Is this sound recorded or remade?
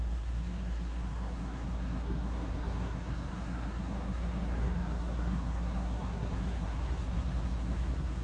remade